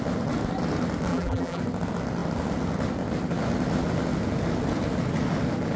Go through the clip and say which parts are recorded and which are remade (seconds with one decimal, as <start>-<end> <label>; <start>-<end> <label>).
0.0-1.1 recorded; 1.1-1.6 remade; 1.6-5.8 recorded